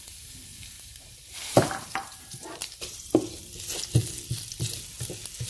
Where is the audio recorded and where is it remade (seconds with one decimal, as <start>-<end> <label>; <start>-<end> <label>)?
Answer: 0.0-0.5 recorded; 0.5-3.5 remade; 3.5-5.5 recorded